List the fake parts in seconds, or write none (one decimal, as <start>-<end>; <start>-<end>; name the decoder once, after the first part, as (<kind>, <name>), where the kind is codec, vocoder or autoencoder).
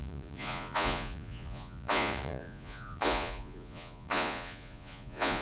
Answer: 0.0-5.4 (vocoder, Vocos)